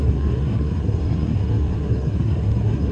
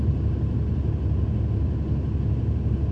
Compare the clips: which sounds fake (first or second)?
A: first